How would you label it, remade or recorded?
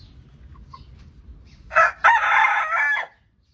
recorded